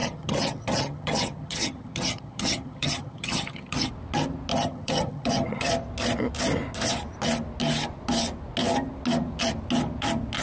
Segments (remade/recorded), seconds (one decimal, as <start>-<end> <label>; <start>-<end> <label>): 0.0-3.9 remade; 3.9-4.5 recorded; 4.5-5.7 remade; 5.7-10.4 recorded